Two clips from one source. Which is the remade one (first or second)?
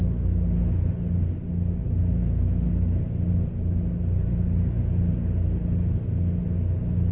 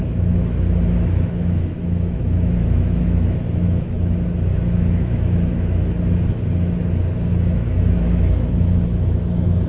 second